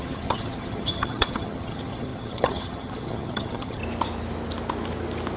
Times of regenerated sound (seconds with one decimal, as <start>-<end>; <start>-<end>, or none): 0.0-3.8